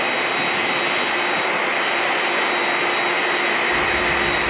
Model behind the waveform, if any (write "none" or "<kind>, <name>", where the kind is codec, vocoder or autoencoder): none